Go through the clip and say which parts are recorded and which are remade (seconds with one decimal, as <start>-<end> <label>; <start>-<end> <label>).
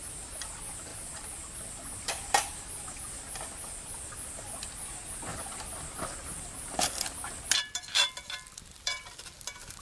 0.0-9.8 recorded